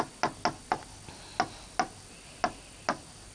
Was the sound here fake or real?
real